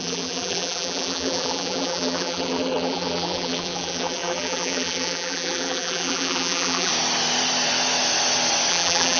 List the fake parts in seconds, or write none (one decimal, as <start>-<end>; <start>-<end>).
0.0-6.9; 8.7-9.2